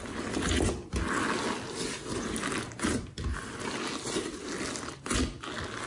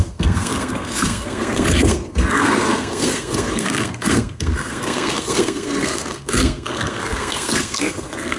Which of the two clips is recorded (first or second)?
first